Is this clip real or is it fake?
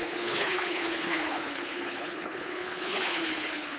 fake